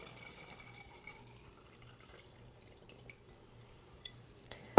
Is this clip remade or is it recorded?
remade